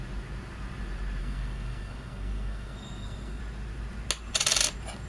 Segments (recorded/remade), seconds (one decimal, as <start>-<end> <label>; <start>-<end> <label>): 0.0-1.2 recorded; 1.2-3.4 remade; 3.4-5.1 recorded